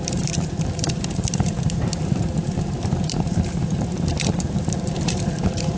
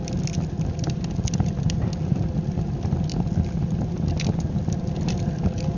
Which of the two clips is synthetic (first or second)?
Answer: first